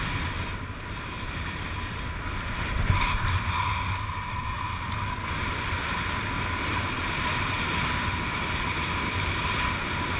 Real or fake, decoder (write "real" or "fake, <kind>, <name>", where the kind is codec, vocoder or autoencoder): real